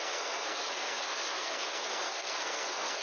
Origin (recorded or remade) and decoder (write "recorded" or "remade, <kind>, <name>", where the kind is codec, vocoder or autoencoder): remade, codec, SNAC